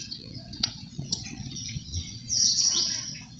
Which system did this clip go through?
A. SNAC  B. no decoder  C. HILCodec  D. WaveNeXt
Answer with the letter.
D